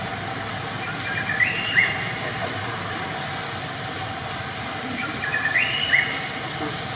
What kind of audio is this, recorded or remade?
recorded